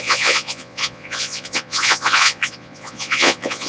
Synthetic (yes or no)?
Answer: yes